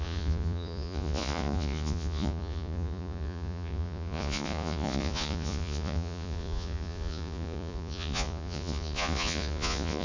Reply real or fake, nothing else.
fake